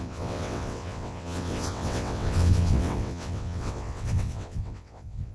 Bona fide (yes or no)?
no